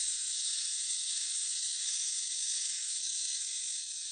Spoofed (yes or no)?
yes